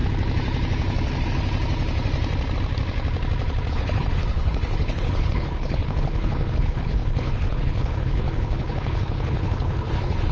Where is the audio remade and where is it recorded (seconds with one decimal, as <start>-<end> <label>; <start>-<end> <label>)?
0.0-3.7 recorded; 3.7-10.3 remade